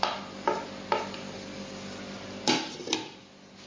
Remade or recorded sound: recorded